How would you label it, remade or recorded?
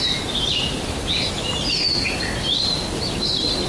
recorded